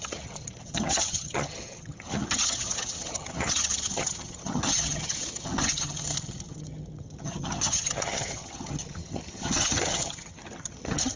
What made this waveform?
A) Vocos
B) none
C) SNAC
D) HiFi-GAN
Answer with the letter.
D